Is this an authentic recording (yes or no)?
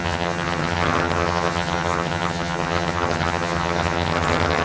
no